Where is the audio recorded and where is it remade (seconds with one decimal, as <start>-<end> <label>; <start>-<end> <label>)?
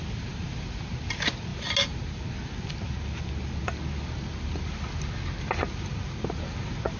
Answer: 0.0-7.0 recorded